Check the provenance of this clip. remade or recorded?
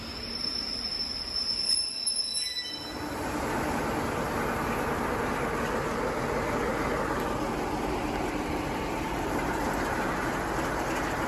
recorded